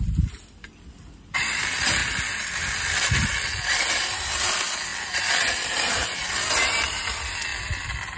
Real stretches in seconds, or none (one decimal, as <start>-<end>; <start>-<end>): 0.0-8.2